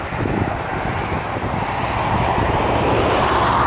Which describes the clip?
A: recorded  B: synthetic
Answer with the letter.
A